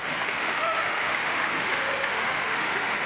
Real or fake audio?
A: fake